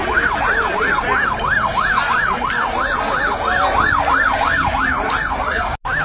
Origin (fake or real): real